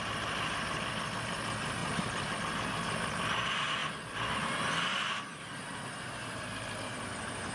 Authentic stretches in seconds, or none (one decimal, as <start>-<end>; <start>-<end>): 0.0-7.5